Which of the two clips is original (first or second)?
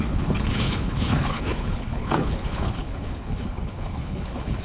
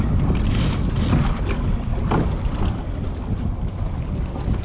second